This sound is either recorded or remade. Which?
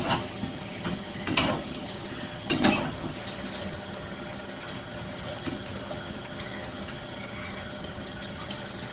remade